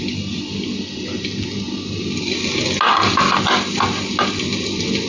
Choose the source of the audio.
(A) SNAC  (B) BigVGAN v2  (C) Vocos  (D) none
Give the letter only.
D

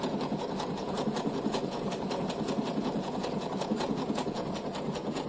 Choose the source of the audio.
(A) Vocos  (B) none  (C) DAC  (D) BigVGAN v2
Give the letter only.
A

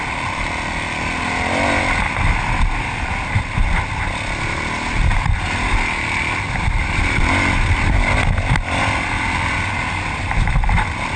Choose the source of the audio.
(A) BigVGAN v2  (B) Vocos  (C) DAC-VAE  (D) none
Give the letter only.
D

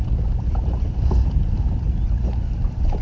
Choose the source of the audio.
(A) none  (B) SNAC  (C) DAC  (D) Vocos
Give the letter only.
A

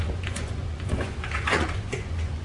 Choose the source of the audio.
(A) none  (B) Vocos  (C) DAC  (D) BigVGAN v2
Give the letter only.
B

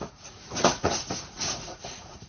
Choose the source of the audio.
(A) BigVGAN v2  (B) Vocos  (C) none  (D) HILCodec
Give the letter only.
B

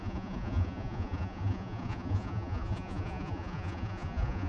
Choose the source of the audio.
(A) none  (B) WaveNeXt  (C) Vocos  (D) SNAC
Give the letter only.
C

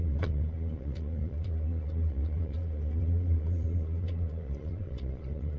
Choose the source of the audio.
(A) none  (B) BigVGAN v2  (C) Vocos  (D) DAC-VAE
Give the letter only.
C